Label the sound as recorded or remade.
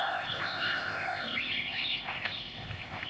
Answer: remade